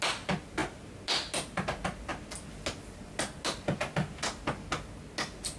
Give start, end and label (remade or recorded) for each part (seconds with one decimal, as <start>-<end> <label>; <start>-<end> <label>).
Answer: 0.0-5.6 recorded